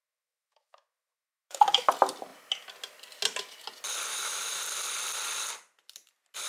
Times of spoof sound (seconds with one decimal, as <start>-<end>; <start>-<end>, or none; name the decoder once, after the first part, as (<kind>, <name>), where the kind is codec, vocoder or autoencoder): 0.0-1.9 (autoencoder, DAC-VAE); 4.1-4.6